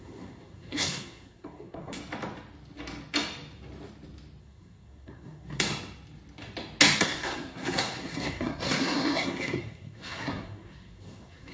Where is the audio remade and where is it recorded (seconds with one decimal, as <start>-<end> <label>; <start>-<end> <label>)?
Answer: 0.0-2.0 remade; 2.0-4.4 recorded; 4.4-5.7 remade; 5.7-7.0 recorded; 7.0-11.5 remade